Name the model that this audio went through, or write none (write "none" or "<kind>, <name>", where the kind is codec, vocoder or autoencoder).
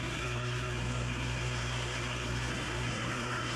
codec, SNAC